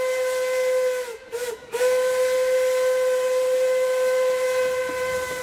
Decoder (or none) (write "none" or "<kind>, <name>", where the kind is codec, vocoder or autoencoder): none